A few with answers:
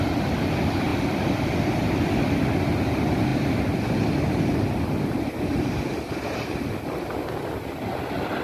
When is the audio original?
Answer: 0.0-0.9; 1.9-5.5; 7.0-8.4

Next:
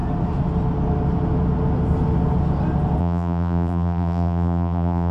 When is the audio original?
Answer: 0.0-3.0

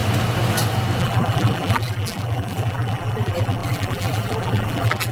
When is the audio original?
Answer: 0.0-1.0

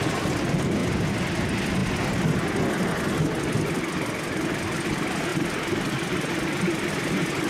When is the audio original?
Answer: 0.0-7.5

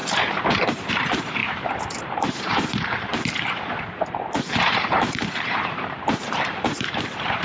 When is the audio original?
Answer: 1.4-2.0; 3.1-4.3

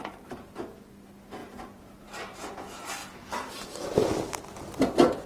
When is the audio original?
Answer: 0.0-1.4; 2.5-3.0; 3.5-5.3

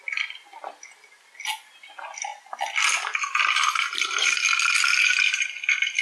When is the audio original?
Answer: 0.0-2.3; 5.5-6.0